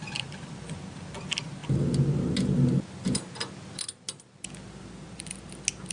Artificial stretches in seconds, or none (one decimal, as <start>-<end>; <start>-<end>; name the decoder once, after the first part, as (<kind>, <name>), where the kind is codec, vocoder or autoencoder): none